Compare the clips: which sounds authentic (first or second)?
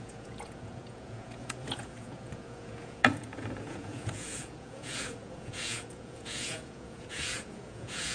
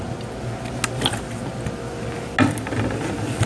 second